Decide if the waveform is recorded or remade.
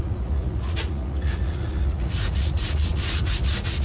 remade